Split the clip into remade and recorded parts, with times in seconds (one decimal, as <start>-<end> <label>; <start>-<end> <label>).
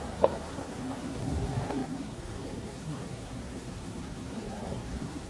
0.0-5.3 remade